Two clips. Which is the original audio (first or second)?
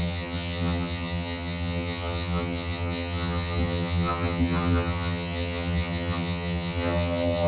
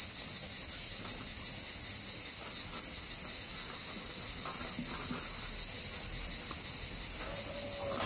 second